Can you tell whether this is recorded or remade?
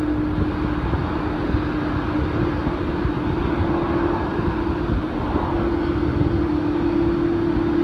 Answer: recorded